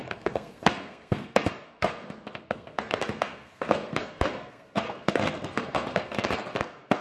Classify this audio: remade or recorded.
remade